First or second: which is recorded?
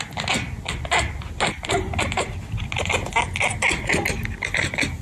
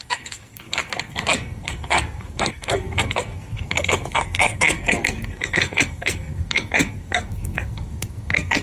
first